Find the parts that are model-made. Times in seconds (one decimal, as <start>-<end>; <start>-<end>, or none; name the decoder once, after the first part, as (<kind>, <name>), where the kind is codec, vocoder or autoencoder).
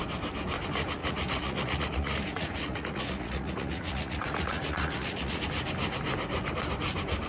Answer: 1.0-5.4 (vocoder, Vocos)